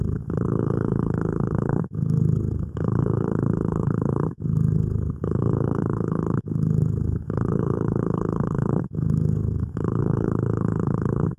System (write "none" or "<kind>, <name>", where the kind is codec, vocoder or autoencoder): codec, SNAC